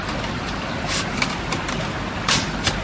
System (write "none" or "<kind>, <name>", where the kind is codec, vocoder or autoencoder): none